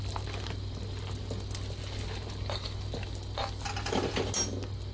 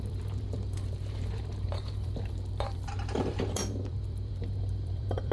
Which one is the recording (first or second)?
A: first